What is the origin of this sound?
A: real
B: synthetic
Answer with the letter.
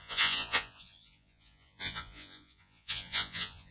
B